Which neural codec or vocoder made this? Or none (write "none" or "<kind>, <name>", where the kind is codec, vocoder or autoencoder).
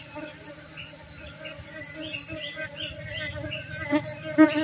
none